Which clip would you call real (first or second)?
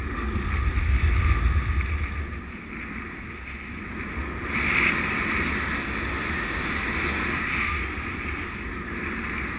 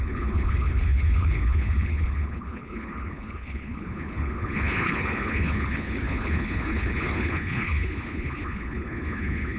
first